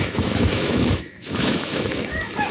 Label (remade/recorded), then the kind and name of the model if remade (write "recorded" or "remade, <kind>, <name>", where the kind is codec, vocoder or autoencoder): remade, autoencoder, DAC-VAE